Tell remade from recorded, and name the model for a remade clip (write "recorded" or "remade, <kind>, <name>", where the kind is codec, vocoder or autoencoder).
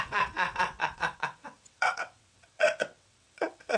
remade, vocoder, WaveNeXt